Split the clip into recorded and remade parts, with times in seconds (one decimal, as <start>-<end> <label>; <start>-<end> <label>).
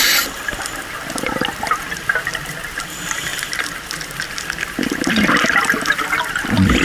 0.0-6.8 recorded